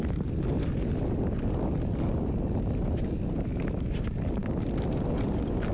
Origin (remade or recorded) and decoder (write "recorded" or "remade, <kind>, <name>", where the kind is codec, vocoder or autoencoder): recorded